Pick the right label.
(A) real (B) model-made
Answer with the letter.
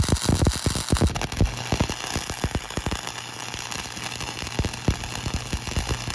A